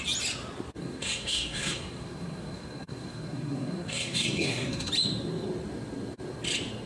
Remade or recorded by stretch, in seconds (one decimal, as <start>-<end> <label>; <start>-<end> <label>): 0.0-0.8 recorded; 0.8-4.9 remade; 4.9-6.9 recorded